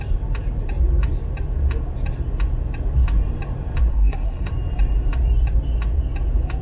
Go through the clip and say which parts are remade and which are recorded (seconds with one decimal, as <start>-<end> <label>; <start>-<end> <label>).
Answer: 0.0-3.9 recorded; 3.9-4.5 remade; 4.5-6.6 recorded